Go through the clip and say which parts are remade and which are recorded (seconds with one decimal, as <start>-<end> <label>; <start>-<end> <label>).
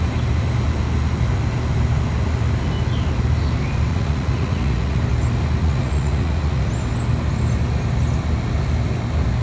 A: 0.0-3.9 recorded; 3.9-5.0 remade; 5.0-5.6 recorded; 5.6-6.7 remade; 6.7-9.4 recorded